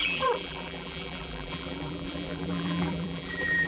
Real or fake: fake